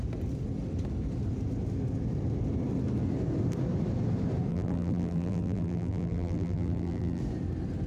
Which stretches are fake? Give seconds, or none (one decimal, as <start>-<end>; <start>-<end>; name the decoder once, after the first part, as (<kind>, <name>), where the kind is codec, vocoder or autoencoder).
4.5-7.2 (vocoder, BigVGAN v2)